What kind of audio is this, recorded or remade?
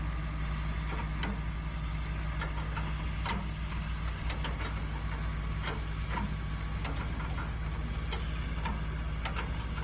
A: recorded